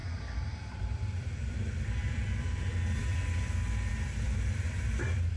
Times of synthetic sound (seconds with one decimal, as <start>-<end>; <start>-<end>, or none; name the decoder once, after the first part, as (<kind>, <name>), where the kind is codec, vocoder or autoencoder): 0.0-3.1 (vocoder, BigVGAN v2); 3.9-5.4